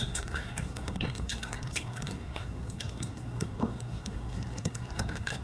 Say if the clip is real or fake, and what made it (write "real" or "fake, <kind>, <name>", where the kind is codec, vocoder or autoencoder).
fake, codec, SNAC